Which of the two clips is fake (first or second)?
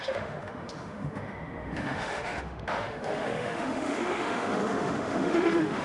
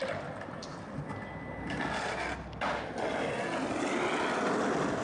first